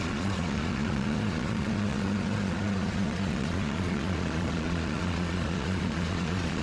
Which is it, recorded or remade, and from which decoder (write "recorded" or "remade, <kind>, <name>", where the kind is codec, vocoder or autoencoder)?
remade, vocoder, Vocos